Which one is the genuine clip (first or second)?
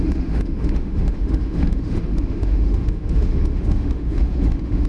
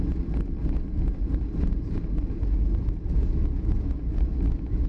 second